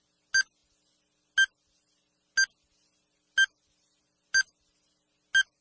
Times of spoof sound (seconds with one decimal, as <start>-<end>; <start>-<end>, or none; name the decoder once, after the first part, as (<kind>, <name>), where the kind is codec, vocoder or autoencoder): none